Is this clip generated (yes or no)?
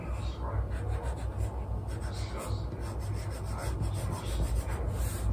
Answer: no